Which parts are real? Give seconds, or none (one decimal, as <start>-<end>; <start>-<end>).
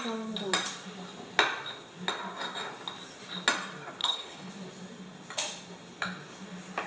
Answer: 0.0-4.0; 4.5-6.9